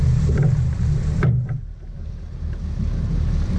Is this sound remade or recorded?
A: recorded